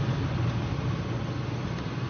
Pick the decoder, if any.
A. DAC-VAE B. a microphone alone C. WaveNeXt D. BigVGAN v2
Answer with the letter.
B